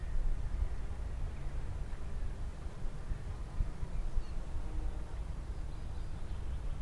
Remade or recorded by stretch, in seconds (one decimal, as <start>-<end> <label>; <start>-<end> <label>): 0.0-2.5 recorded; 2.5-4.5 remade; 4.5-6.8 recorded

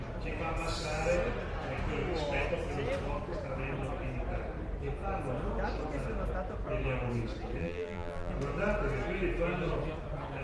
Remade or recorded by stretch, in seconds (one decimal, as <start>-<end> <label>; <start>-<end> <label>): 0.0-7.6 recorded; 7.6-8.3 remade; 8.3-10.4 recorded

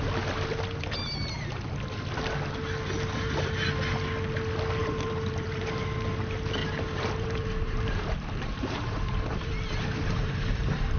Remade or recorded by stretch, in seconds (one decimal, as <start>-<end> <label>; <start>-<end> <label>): 0.0-4.8 recorded; 4.8-5.6 remade; 5.6-6.6 recorded; 6.6-11.0 remade

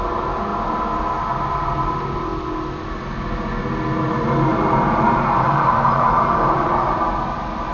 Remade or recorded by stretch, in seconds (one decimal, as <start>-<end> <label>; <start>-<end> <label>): 0.0-4.5 recorded; 4.5-6.9 remade; 6.9-7.7 recorded